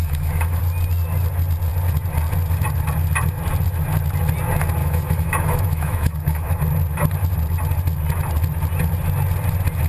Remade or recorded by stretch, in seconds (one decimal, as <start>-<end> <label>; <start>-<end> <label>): 0.0-0.6 remade; 0.6-4.8 recorded; 4.8-6.6 remade; 6.6-9.9 recorded